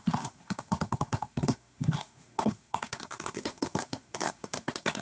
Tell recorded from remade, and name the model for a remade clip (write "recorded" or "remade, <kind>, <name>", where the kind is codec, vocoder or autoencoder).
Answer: remade, codec, SNAC